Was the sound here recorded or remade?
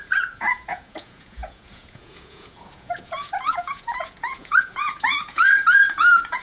remade